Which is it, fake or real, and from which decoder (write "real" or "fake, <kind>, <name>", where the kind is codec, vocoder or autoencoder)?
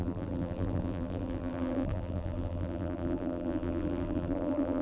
fake, vocoder, BigVGAN v2